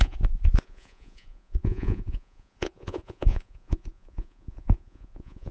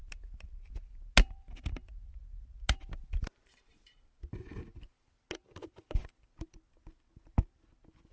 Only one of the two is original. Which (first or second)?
second